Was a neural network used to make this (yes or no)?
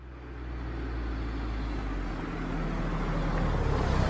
no